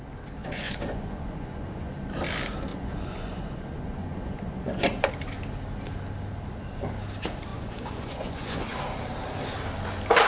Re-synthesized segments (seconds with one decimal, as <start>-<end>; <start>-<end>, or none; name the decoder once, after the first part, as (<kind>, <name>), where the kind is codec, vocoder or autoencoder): 0.4-1.9 (vocoder, Vocos); 2.7-5.1; 7.5-8.6